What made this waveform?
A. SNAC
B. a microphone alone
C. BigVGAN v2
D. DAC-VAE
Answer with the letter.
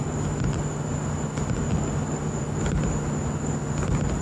B